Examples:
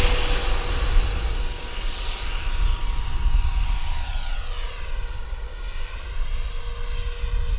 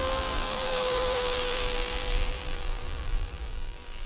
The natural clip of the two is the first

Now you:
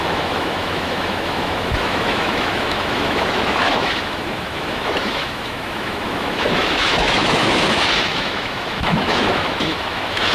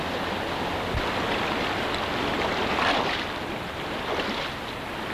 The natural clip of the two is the second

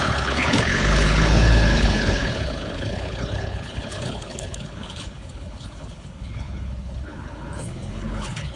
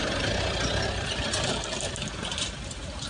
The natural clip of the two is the second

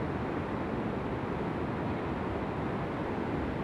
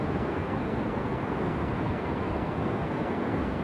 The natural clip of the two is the first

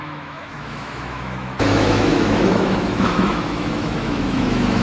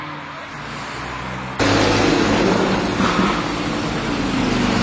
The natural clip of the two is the second